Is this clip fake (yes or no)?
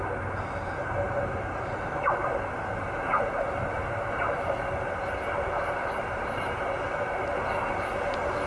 no